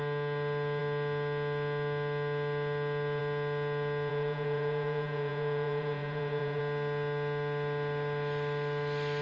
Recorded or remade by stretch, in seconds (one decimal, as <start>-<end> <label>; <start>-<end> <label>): 0.0-4.1 recorded; 4.1-6.6 remade; 6.6-9.2 recorded